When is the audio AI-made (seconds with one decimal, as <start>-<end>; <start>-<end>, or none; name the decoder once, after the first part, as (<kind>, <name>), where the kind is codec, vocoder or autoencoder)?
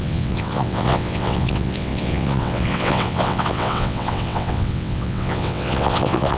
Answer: 0.0-6.4 (vocoder, WaveNeXt)